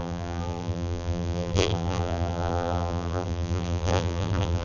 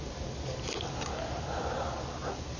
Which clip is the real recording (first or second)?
second